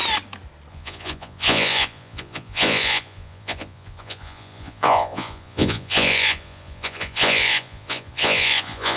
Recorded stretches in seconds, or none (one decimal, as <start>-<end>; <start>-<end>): 0.0-0.7